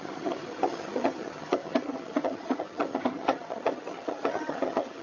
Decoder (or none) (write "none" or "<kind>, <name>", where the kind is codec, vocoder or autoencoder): vocoder, HiFi-GAN